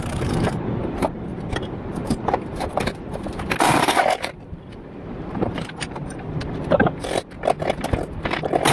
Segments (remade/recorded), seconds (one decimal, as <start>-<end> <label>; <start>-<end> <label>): 0.0-1.3 recorded; 1.3-6.5 remade; 6.5-8.7 recorded